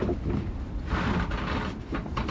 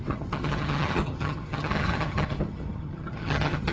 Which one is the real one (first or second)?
first